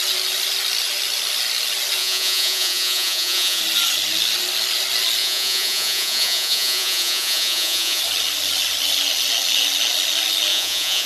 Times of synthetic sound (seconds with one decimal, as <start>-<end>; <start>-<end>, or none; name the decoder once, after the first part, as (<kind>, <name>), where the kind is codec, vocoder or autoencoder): 2.0-3.6 (vocoder, Vocos); 5.2-8.0; 10.5-11.1